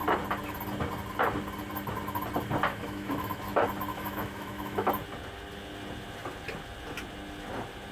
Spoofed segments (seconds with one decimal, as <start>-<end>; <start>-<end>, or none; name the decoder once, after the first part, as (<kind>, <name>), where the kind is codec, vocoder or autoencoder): 2.7-3.4 (autoencoder, DAC-VAE); 3.9-4.9